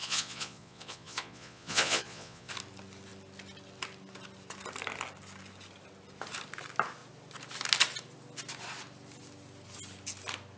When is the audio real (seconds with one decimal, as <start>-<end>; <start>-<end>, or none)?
2.5-10.6